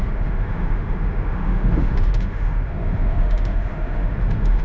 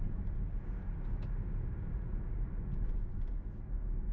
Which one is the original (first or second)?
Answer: second